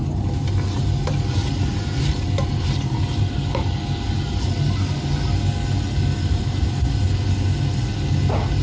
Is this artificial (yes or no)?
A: no